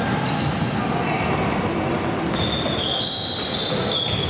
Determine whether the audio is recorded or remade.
recorded